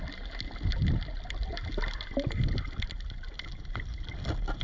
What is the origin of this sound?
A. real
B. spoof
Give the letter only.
A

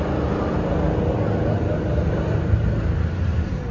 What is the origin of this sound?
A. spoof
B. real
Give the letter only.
B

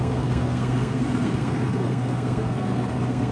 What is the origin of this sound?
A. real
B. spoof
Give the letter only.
B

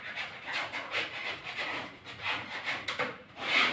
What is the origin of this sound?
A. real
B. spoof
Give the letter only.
B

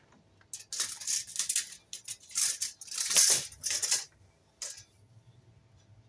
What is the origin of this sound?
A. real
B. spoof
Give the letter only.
A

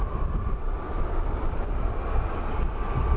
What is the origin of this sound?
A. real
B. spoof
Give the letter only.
A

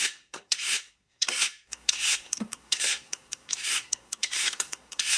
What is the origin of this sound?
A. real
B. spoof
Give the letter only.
B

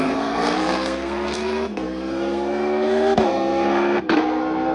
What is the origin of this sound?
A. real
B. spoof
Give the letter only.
B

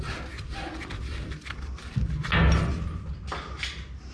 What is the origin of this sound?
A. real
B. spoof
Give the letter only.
A